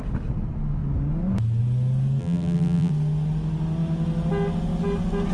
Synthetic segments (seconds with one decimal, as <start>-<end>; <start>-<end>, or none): 2.2-2.9